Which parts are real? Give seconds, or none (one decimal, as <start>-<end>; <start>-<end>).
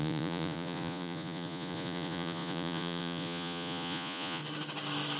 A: 4.4-5.2